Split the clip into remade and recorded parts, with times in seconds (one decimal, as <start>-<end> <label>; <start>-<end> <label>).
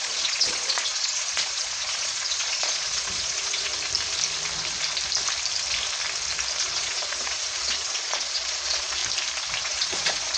0.0-3.7 remade; 3.7-6.6 recorded; 6.6-9.0 remade; 9.0-9.6 recorded; 9.6-10.4 remade